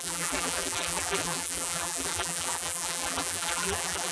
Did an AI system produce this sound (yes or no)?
yes